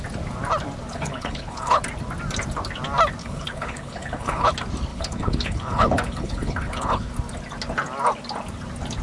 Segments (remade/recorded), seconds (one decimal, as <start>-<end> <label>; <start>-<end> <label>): 0.0-0.9 recorded; 0.9-1.8 remade; 1.8-3.2 recorded; 3.2-4.5 remade; 4.5-4.9 recorded; 4.9-7.1 remade; 7.1-9.0 recorded